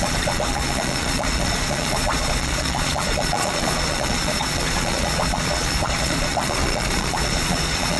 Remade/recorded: remade